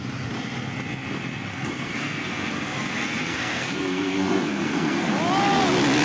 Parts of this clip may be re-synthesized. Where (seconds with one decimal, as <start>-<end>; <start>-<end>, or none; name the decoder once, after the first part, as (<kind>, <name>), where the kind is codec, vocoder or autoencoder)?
1.5-5.1 (codec, SNAC)

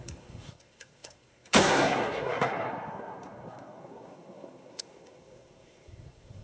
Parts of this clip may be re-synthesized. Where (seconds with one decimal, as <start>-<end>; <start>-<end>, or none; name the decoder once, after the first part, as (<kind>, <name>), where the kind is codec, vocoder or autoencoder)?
0.0-6.4 (codec, SNAC)

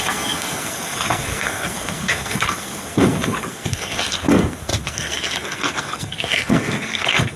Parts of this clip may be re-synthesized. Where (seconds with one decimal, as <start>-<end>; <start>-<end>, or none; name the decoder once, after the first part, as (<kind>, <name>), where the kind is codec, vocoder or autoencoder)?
0.0-7.4 (codec, SNAC)

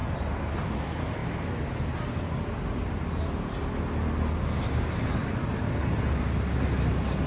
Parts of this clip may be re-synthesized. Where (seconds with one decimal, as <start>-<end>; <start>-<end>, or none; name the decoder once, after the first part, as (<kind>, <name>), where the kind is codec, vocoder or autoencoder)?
none

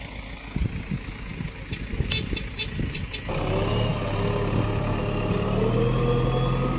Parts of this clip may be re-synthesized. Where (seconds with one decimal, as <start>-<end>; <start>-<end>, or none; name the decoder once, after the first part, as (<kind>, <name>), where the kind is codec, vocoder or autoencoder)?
none

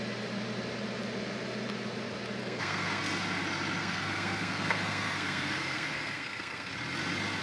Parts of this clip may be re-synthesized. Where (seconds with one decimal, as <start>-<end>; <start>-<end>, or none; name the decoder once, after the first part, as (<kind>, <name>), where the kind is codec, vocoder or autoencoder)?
2.4-3.0 (codec, SNAC); 3.8-6.7

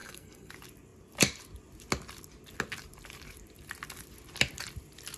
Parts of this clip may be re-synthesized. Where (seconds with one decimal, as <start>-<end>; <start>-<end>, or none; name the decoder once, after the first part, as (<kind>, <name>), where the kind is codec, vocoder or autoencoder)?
0.0-0.5 (codec, SNAC)

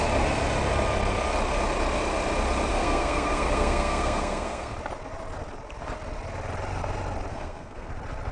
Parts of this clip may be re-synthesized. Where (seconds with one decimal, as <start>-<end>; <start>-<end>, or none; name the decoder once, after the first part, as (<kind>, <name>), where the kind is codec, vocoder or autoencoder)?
2.7-4.7 (codec, SNAC); 7.3-7.9